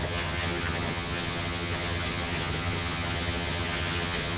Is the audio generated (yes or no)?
yes